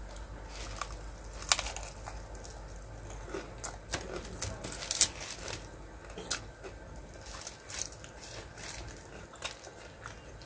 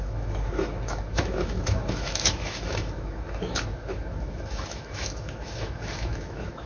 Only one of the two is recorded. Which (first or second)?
first